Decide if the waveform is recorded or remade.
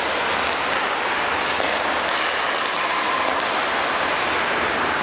recorded